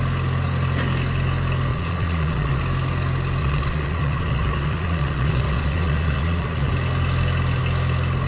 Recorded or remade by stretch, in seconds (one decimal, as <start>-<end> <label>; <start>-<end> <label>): 0.0-1.7 recorded; 1.7-2.6 remade; 2.6-3.4 recorded; 3.4-6.7 remade; 6.7-8.3 recorded